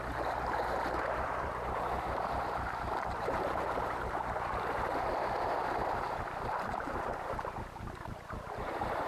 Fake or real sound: fake